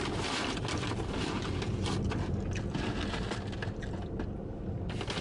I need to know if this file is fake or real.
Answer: real